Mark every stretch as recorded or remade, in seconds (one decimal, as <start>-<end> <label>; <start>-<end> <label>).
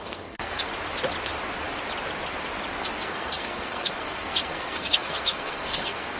0.0-0.7 remade; 0.7-3.0 recorded; 3.0-6.2 remade